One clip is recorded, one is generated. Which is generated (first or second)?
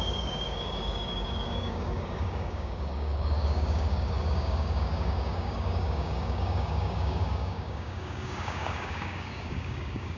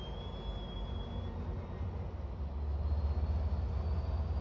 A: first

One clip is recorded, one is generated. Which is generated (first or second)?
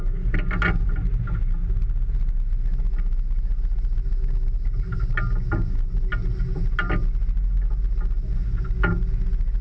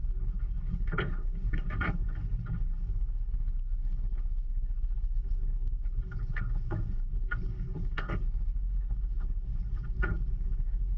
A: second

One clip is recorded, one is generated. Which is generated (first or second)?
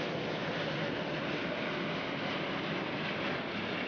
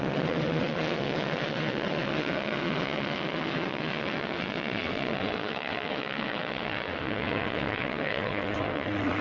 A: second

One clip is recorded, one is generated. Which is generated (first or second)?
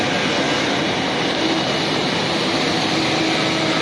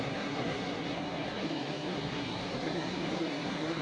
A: second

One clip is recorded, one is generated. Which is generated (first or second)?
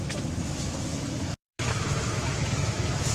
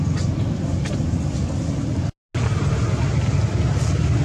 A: first